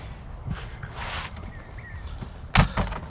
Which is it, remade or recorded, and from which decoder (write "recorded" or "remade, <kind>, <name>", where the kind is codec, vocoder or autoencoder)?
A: recorded